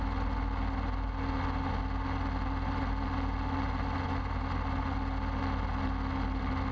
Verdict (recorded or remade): recorded